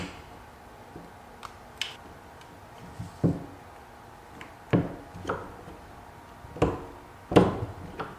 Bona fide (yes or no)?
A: yes